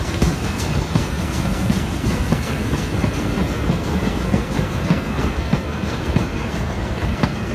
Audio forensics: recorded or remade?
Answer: remade